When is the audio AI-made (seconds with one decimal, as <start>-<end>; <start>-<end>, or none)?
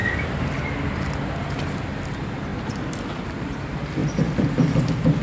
0.0-1.1; 2.5-3.6; 4.0-4.8